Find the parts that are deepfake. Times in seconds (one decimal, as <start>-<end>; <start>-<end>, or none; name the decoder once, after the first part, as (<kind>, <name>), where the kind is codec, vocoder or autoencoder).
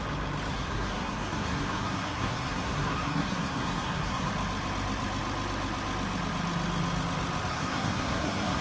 0.5-4.3 (codec, SNAC); 7.5-8.6